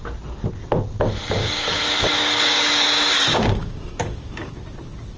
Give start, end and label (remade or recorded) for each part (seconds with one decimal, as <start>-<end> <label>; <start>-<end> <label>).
0.0-1.4 recorded; 1.4-4.5 remade; 4.5-5.2 recorded